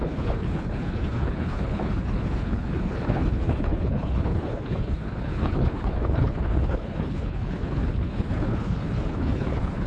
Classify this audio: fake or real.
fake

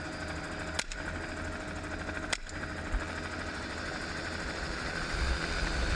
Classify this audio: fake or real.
real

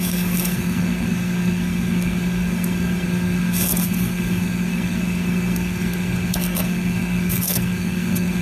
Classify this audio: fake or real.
fake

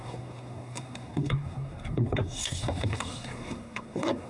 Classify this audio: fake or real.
fake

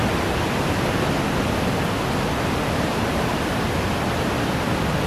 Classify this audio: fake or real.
real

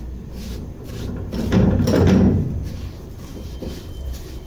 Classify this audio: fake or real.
real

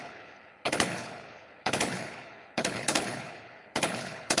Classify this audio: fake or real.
fake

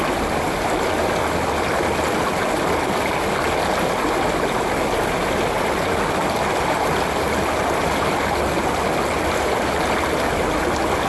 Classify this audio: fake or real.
real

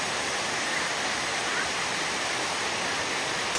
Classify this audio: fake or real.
real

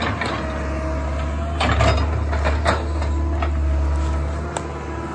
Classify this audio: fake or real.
real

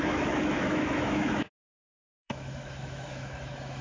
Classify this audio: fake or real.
fake